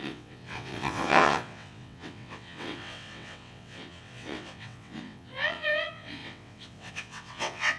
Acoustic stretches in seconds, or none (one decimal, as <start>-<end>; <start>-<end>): none